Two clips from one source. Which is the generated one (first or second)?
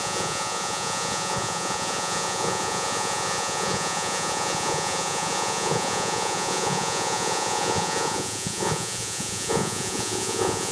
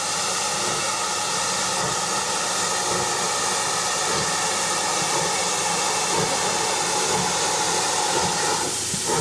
first